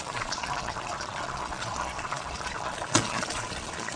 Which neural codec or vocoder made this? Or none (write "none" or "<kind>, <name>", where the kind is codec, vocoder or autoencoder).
vocoder, Vocos